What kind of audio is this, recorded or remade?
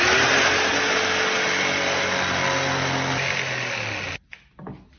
recorded